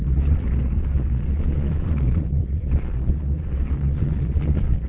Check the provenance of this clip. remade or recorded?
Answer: remade